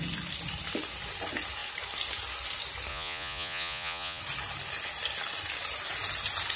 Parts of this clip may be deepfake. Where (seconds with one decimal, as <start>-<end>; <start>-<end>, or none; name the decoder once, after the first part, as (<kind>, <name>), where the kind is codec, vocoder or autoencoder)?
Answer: 2.9-4.2 (vocoder, Vocos)